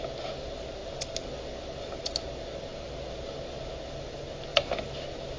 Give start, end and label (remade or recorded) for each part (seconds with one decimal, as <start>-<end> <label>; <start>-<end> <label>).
0.0-5.4 recorded